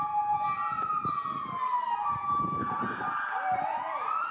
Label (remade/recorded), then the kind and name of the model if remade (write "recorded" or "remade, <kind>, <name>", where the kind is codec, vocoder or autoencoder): recorded